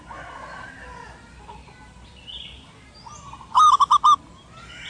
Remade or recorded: recorded